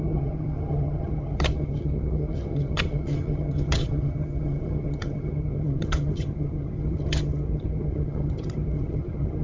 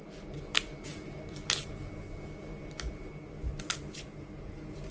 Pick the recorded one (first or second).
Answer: second